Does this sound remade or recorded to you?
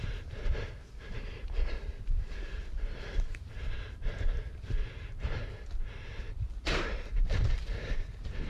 remade